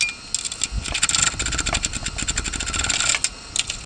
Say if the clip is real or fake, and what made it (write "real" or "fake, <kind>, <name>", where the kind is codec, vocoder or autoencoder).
real